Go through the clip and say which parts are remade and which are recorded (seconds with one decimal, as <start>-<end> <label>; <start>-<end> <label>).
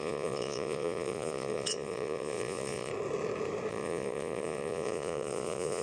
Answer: 0.0-2.9 remade; 2.9-3.7 recorded; 3.7-5.8 remade